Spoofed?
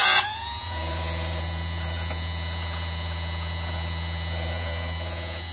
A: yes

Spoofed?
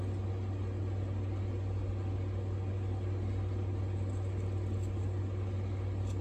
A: no